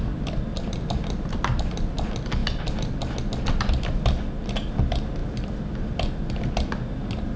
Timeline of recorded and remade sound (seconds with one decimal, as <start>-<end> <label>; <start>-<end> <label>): 0.0-7.4 recorded